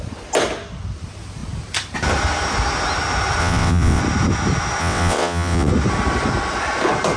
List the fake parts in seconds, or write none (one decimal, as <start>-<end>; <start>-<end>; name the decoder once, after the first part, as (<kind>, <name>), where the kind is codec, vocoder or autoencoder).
3.4-4.0 (vocoder, WaveNeXt); 4.8-5.7

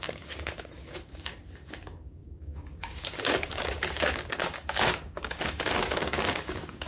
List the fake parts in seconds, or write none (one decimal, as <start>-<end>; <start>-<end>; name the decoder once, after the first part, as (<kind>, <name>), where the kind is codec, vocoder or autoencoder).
0.0-6.9 (codec, DAC)